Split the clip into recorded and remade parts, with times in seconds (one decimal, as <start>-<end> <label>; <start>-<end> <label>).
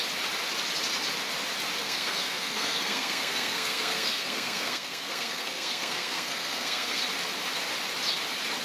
0.0-1.8 recorded; 1.8-7.0 remade; 7.0-8.6 recorded